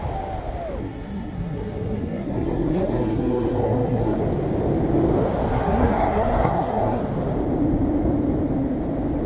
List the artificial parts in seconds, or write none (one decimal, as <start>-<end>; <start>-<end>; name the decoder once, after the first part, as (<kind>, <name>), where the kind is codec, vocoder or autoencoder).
0.8-4.2 (codec, SNAC); 5.5-7.0